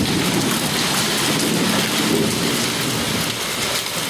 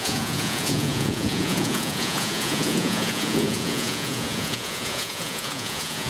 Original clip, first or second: first